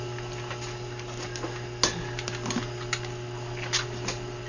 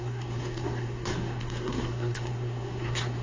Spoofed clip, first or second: second